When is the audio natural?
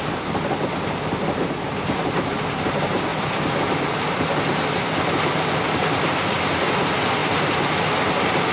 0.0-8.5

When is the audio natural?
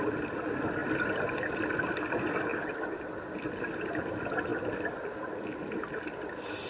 0.0-6.7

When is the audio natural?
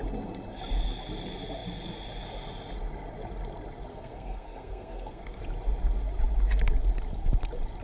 0.0-3.9; 5.4-7.8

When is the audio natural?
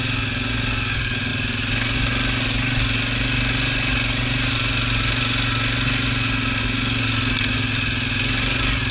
0.0-8.9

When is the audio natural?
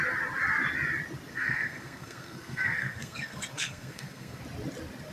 0.0-1.3; 4.4-5.1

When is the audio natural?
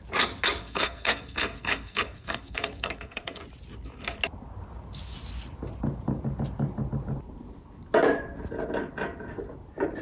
0.0-0.6; 3.4-10.0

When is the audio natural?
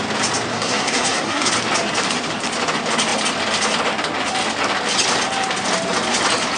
0.0-0.5; 1.5-6.6